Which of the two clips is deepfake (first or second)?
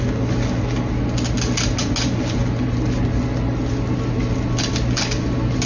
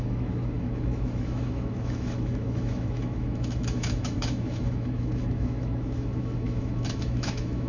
second